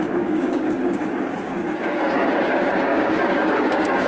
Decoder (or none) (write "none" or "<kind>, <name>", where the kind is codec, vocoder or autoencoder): codec, DAC